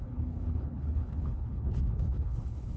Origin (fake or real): fake